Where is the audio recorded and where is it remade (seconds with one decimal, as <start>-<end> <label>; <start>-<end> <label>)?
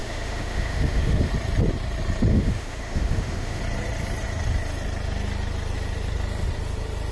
0.0-1.3 remade; 1.3-2.3 recorded; 2.3-3.6 remade; 3.6-7.1 recorded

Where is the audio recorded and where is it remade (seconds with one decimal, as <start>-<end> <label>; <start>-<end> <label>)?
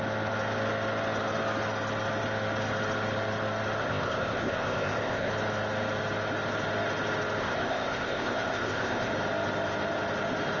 0.0-3.8 recorded; 3.8-5.3 remade; 5.3-7.4 recorded; 7.4-9.1 remade; 9.1-10.6 recorded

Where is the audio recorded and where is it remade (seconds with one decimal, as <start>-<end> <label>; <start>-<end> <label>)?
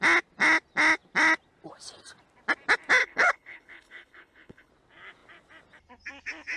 0.0-3.0 recorded; 3.0-4.7 remade; 4.7-6.6 recorded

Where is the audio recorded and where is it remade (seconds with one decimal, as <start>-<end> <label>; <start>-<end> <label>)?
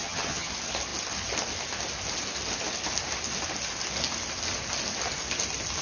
0.0-0.5 remade; 0.5-5.8 recorded